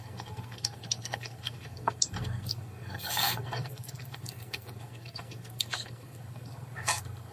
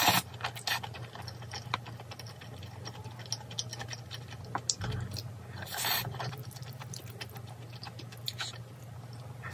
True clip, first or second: second